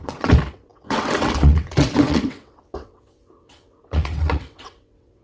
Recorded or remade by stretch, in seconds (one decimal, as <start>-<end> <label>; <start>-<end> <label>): 0.0-5.2 remade